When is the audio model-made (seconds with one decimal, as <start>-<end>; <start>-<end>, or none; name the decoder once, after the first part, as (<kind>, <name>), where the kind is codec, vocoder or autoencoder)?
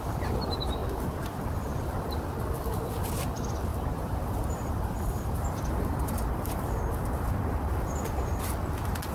0.8-1.4 (vocoder, BigVGAN v2); 3.7-7.8